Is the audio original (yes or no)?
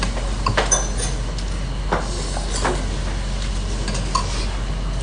yes